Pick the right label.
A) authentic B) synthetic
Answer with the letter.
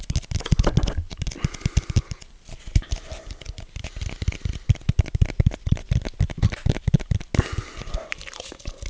A